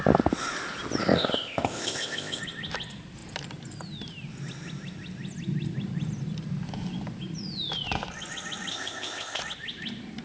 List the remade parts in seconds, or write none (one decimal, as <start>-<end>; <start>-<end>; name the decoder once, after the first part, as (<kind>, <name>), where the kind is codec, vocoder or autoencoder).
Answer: 1.0-2.4 (codec, ZipCodec); 8.7-9.4